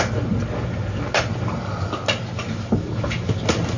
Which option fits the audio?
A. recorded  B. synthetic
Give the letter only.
A